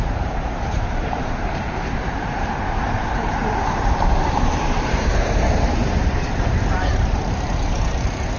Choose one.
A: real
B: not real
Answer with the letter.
B